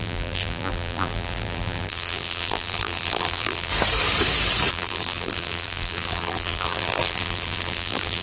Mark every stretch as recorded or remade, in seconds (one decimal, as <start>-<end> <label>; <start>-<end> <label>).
0.0-3.7 remade; 3.7-4.7 recorded; 4.7-8.2 remade